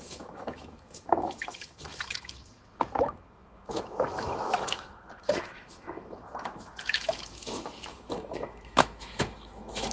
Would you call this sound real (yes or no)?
no